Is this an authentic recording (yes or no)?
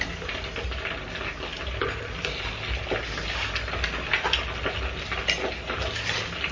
yes